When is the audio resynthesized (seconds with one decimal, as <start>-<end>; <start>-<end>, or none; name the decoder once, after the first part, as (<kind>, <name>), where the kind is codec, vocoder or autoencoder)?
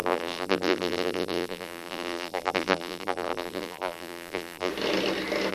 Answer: 0.0-4.7 (vocoder, BigVGAN v2)